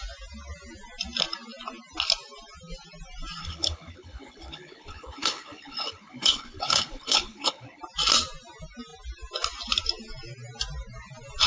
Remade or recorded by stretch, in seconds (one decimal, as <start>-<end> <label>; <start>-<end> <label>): 0.0-3.4 recorded; 3.4-7.8 remade; 7.8-11.5 recorded